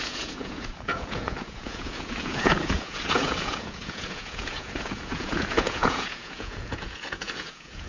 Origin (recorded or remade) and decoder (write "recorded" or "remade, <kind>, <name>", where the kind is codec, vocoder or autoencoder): remade, vocoder, Vocos